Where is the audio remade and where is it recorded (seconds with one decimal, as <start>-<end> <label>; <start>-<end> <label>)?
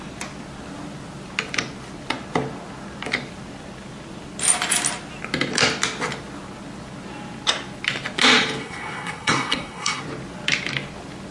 0.0-8.6 recorded; 8.6-10.0 remade; 10.0-11.3 recorded